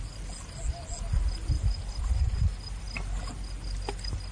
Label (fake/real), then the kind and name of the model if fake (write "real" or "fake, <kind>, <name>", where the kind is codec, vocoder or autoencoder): real